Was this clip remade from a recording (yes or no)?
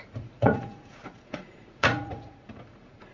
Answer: yes